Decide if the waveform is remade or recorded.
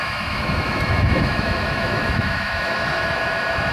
remade